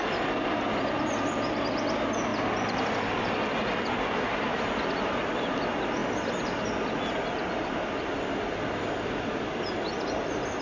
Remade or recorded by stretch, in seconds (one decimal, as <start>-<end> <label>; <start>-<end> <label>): 0.0-10.6 recorded